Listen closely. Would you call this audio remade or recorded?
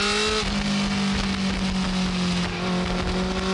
recorded